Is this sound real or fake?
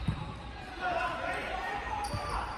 real